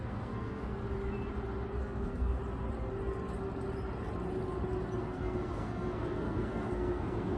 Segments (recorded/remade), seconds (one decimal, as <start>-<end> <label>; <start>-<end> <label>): 0.0-0.8 remade; 0.8-1.8 recorded; 1.8-2.4 remade; 2.4-5.0 recorded; 5.0-7.4 remade